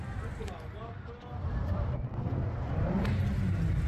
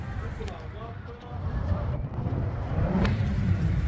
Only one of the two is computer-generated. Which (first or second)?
second